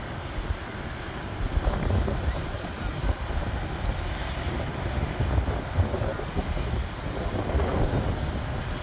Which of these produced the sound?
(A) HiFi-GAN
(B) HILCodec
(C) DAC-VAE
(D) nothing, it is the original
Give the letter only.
D